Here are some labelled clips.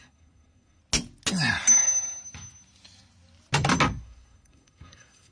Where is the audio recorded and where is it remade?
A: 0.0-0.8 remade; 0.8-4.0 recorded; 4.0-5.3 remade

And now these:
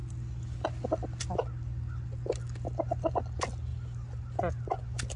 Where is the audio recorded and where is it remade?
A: 0.0-5.2 recorded

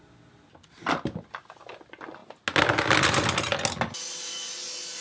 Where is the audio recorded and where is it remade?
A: 0.0-5.0 recorded

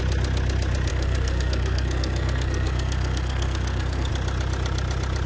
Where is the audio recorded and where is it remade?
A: 0.0-0.9 recorded; 0.9-4.1 remade; 4.1-5.3 recorded